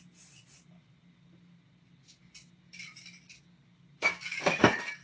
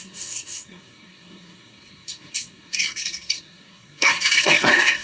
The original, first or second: first